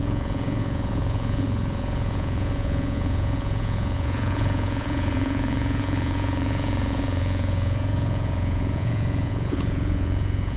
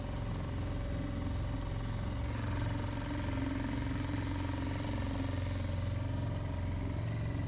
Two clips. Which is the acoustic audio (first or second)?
second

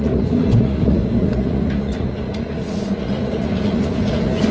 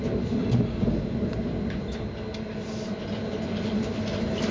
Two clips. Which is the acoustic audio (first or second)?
second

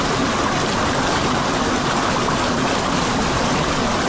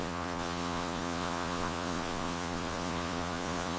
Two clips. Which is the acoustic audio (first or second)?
first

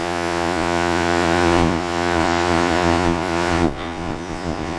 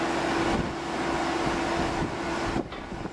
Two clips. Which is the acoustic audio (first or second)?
second